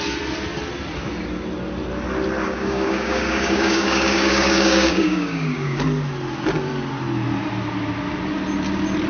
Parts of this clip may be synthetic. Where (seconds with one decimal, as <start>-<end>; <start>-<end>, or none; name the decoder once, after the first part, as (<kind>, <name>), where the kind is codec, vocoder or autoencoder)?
2.4-5.8 (codec, DAC)